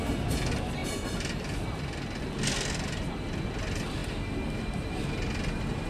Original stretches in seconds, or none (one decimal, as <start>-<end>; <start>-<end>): 0.0-5.9